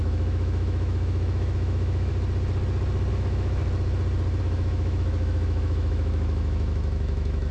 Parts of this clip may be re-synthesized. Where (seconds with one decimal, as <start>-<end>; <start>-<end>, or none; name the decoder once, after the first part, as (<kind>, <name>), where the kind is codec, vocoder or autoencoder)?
0.0-2.1 (autoencoder, DAC-VAE); 3.1-3.6; 4.4-7.5